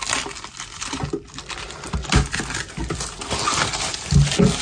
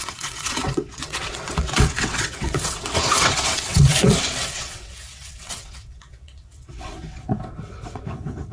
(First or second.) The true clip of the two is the first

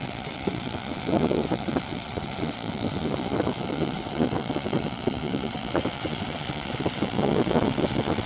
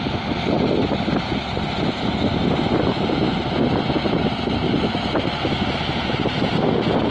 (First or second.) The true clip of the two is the second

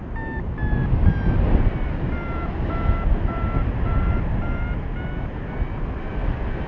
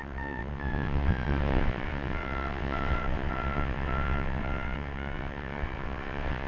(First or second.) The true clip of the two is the first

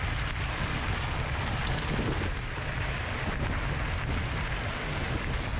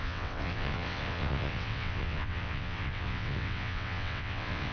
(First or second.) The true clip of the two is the first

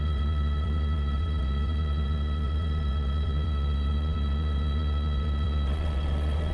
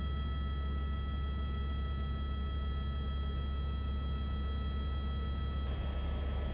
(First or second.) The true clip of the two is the second